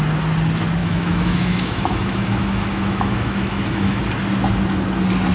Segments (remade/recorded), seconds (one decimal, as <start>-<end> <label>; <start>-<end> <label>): 0.0-0.8 recorded; 0.8-4.0 remade; 4.0-5.3 recorded